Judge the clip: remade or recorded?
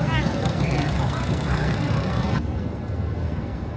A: remade